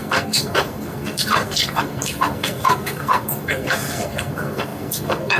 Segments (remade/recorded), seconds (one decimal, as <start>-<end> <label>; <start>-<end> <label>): 0.0-5.4 remade